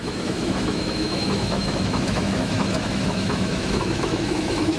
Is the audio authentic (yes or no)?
no